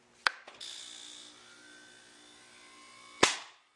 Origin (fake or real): real